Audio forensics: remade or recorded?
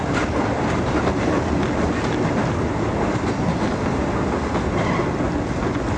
recorded